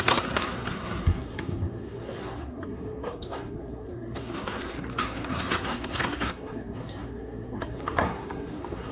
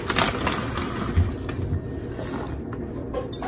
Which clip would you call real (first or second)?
second